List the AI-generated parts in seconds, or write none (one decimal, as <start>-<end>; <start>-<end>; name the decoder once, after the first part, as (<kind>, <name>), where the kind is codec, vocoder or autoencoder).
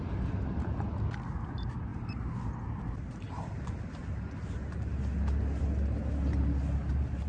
none